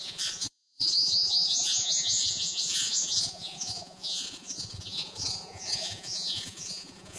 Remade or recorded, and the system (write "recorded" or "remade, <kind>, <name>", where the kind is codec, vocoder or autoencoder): remade, vocoder, Vocos